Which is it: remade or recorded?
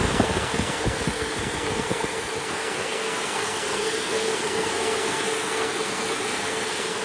remade